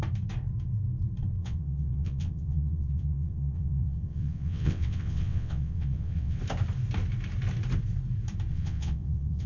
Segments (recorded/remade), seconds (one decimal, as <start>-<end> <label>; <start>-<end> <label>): 0.0-1.4 recorded; 1.4-6.4 remade; 6.4-8.5 recorded; 8.5-9.5 remade